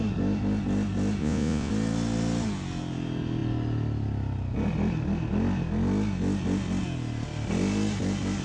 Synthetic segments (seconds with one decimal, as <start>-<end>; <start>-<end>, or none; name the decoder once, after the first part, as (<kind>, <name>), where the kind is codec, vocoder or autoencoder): 1.2-1.7 (vocoder, Vocos)